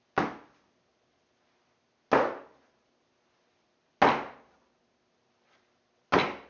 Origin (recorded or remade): recorded